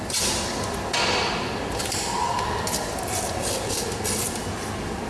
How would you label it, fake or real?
real